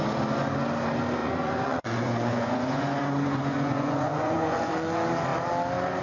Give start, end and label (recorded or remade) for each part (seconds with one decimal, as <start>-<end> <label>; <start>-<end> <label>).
0.0-1.2 recorded; 1.2-4.7 remade; 4.7-6.0 recorded